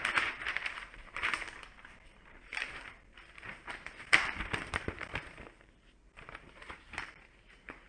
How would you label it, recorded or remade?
remade